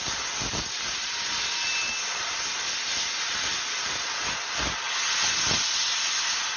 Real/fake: real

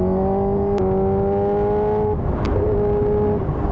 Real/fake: real